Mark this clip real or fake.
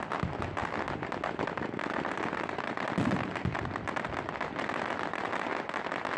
real